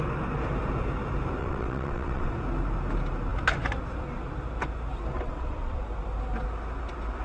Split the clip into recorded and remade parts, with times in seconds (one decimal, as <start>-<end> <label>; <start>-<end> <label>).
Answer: 0.0-1.4 recorded; 1.4-2.3 remade; 2.3-5.1 recorded; 5.1-5.8 remade; 5.8-7.2 recorded